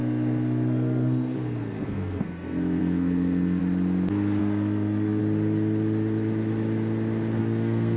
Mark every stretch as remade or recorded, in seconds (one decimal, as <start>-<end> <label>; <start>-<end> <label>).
0.0-3.6 remade; 3.6-4.4 recorded; 4.4-5.2 remade; 5.2-7.4 recorded; 7.4-8.0 remade